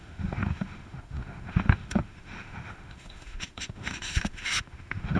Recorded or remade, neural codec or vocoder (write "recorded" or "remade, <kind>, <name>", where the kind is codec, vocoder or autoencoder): remade, autoencoder, DAC-VAE